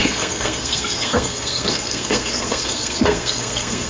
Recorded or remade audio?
remade